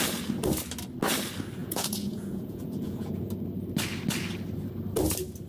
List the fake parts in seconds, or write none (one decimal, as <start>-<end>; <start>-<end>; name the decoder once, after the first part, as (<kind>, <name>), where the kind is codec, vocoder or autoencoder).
1.6-3.3 (vocoder, Vocos)